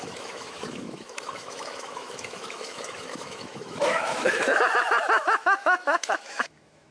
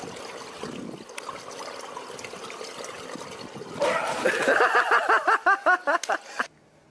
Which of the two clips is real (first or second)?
second